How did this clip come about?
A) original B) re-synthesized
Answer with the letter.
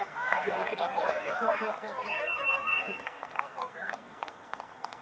B